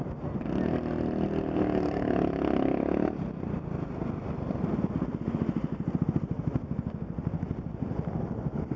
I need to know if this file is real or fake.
real